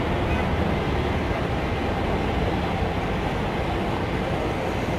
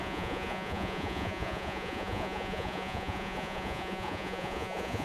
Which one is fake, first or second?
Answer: second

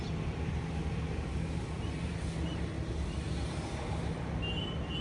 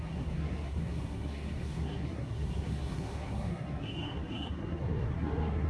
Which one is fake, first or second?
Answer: second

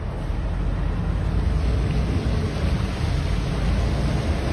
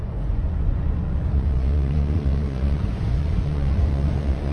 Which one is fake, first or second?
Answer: second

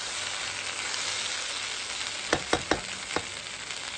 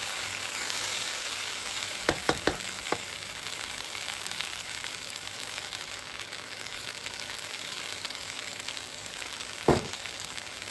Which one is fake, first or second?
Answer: second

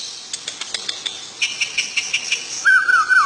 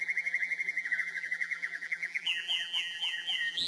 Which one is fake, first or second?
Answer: second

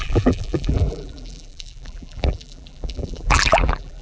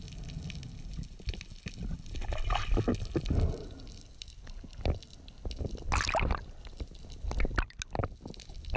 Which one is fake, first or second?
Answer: first